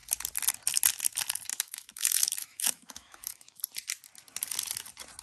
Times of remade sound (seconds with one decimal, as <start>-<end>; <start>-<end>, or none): 1.5-3.6